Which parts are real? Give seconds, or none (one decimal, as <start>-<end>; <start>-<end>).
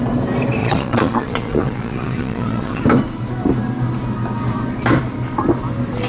0.0-0.6; 2.8-6.1